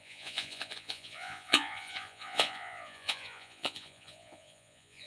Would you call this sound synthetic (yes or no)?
yes